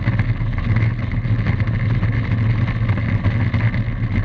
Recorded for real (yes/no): yes